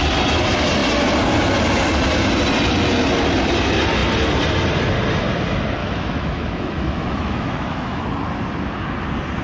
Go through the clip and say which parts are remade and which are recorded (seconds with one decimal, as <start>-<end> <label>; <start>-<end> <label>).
0.0-5.8 recorded; 5.8-8.0 remade; 8.0-9.4 recorded